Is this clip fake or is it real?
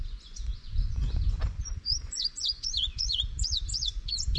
fake